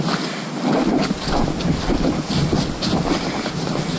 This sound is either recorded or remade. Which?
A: recorded